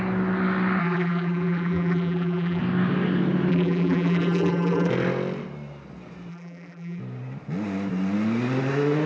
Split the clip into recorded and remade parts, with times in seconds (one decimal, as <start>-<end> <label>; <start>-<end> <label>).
0.0-0.8 recorded; 0.8-2.6 remade; 2.6-3.5 recorded; 3.5-4.9 remade; 4.9-6.3 recorded; 6.3-7.0 remade; 7.0-9.1 recorded